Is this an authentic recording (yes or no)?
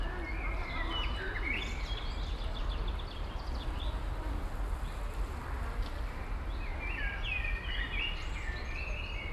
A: yes